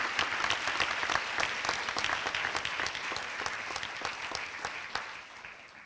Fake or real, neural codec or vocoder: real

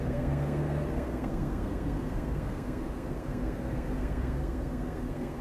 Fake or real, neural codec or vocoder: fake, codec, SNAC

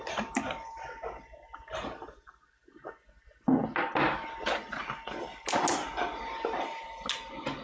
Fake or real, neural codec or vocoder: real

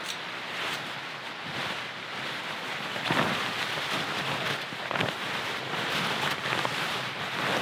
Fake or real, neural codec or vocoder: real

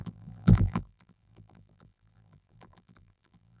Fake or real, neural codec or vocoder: fake, vocoder, BigVGAN v2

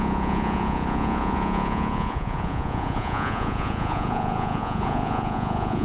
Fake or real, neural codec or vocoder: fake, vocoder, Vocos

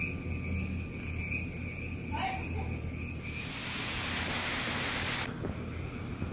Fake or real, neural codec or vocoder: real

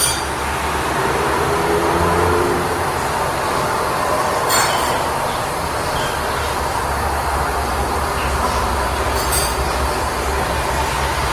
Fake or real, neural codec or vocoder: real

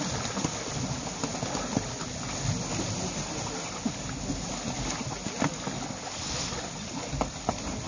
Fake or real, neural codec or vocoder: real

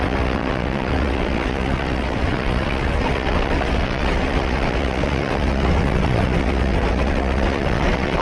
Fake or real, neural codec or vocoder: fake, vocoder, WaveNeXt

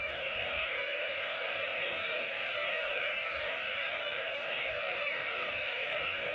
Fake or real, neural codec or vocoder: fake, codec, DAC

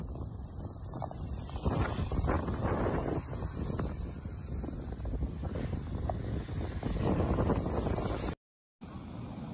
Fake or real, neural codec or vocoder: real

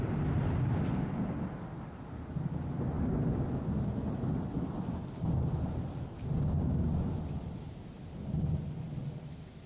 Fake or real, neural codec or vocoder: real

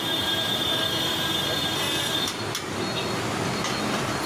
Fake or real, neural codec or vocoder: real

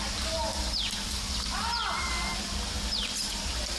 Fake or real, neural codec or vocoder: real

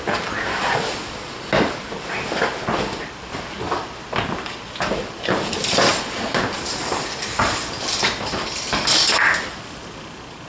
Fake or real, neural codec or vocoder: real